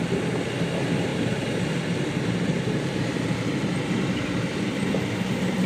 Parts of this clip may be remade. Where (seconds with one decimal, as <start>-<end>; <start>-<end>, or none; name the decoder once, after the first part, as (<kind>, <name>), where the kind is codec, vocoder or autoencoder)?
1.1-4.5 (vocoder, BigVGAN v2)